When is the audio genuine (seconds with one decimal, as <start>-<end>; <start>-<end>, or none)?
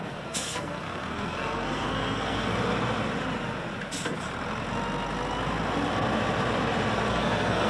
2.5-7.1